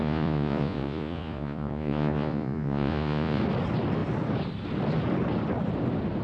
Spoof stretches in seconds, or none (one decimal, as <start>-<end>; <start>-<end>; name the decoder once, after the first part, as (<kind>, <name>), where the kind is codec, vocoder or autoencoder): 0.0-3.4 (vocoder, Vocos)